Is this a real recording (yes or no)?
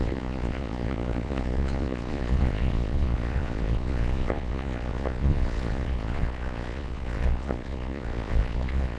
no